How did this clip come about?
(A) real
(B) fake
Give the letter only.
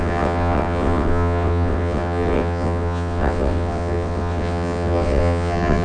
B